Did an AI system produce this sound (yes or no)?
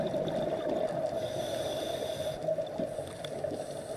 no